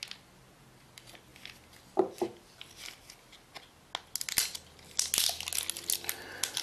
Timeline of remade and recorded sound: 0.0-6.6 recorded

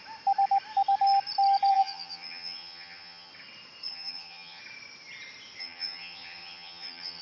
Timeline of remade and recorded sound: 0.0-1.7 recorded; 1.7-3.3 remade; 3.3-3.9 recorded; 3.9-4.6 remade; 4.6-5.6 recorded; 5.6-7.2 remade

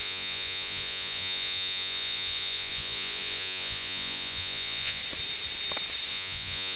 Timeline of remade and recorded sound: 0.0-5.0 remade; 5.0-6.1 recorded; 6.1-6.8 remade